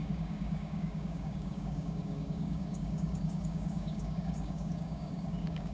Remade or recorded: remade